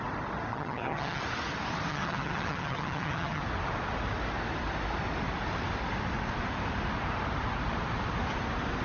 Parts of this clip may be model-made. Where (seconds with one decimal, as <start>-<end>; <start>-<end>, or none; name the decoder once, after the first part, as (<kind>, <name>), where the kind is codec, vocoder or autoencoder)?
0.5-1.2 (vocoder, HiFi-GAN); 1.9-3.4